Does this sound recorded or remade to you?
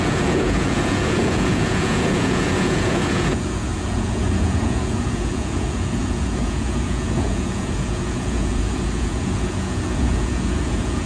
remade